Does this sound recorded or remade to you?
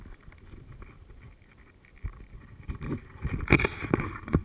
recorded